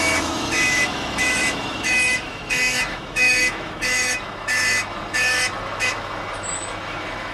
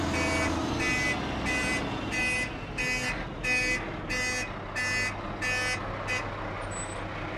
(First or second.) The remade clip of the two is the first